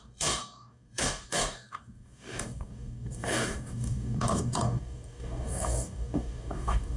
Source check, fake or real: fake